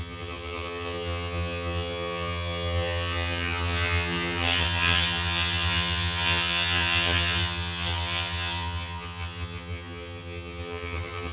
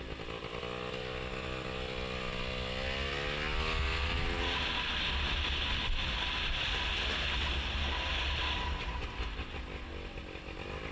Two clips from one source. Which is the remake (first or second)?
first